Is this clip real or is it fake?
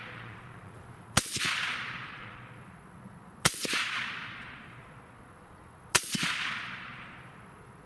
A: fake